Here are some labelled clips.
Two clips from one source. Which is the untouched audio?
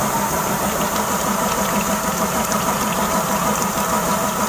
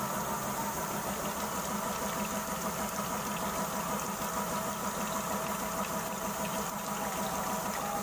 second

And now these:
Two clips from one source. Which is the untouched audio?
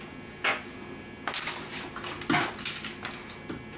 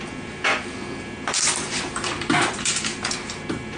first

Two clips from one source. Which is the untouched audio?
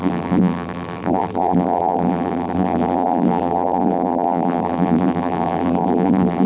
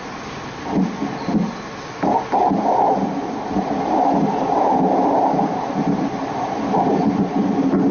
second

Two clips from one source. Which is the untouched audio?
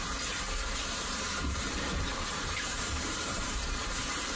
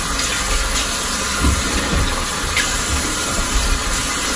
second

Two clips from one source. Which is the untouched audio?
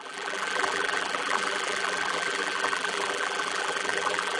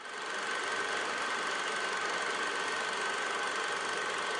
second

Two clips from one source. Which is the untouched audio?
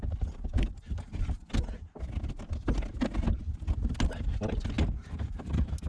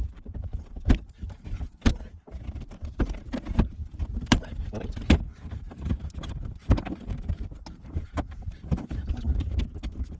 first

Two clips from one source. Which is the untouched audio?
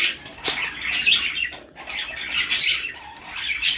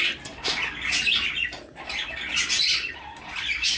second